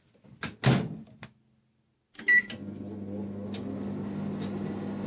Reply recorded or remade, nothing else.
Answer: recorded